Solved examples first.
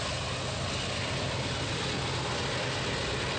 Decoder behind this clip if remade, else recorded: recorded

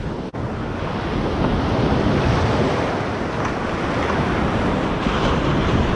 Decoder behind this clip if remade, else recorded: recorded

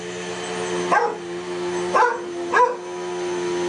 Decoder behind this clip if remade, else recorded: recorded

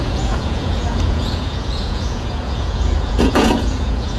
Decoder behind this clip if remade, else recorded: remade, vocoder, Vocos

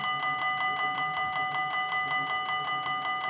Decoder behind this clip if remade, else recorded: recorded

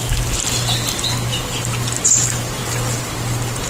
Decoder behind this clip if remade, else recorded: recorded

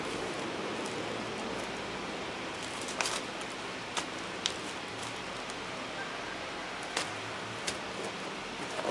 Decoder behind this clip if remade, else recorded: recorded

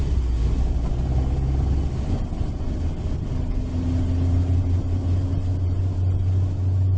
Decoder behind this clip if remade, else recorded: recorded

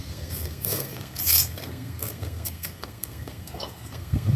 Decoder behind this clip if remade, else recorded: remade, codec, SNAC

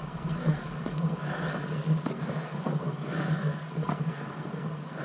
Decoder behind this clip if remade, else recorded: remade, codec, SNAC